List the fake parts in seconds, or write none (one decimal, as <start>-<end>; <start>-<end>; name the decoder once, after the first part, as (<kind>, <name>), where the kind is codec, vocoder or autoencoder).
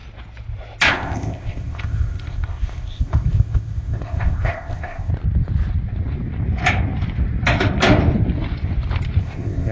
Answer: 0.9-5.1 (codec, ZipCodec); 9.2-9.7